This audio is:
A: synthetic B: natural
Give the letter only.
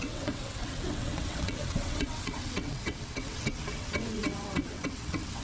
A